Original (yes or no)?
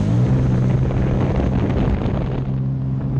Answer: yes